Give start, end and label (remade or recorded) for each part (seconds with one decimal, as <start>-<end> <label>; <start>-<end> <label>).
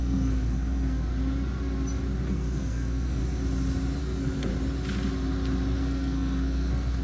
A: 0.0-1.1 remade; 1.1-2.3 recorded; 2.3-3.2 remade; 3.2-4.0 recorded; 4.0-4.5 remade; 4.5-5.8 recorded; 5.8-7.0 remade